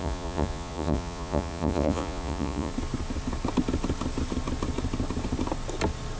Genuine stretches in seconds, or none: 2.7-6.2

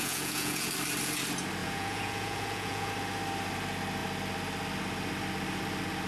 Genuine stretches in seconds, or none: 0.7-1.6; 2.9-6.1

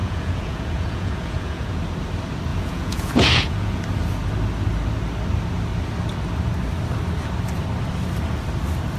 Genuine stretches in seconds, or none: 1.8-2.5; 3.8-9.0

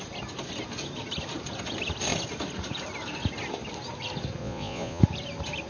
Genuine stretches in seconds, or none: 0.0-4.4; 5.0-5.7